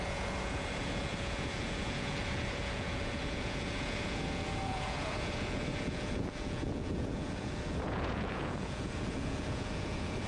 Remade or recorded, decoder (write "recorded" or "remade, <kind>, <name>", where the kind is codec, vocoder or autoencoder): remade, vocoder, Vocos